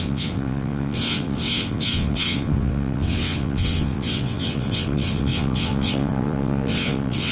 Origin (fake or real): fake